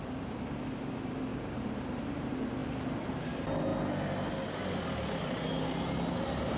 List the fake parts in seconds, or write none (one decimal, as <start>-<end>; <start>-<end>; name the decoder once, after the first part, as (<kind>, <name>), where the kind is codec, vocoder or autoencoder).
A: 1.3-2.0 (vocoder, BigVGAN v2); 2.6-3.3